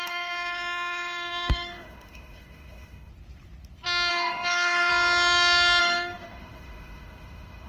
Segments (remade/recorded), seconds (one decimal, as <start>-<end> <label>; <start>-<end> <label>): 0.0-3.1 remade; 3.1-4.1 recorded; 4.1-4.9 remade; 4.9-5.8 recorded; 5.8-7.7 remade